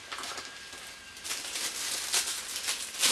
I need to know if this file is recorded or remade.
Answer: recorded